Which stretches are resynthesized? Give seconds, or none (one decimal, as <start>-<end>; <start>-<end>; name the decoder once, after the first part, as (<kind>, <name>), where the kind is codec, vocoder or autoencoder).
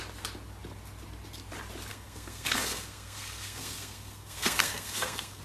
1.9-5.4 (codec, SNAC)